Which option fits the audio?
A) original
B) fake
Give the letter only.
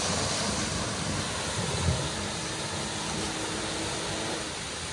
A